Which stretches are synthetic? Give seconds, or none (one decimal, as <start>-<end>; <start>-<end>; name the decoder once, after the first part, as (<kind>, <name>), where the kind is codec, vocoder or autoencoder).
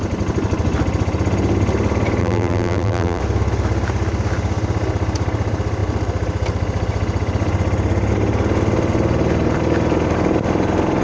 2.2-3.2 (vocoder, BigVGAN v2)